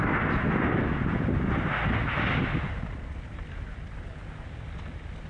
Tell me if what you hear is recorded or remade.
recorded